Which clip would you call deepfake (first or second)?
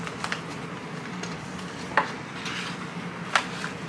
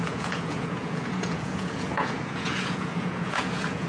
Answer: second